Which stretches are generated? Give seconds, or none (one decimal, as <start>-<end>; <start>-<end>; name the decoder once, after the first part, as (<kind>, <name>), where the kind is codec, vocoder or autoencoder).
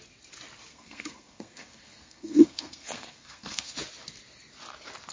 0.7-3.8 (codec, SNAC)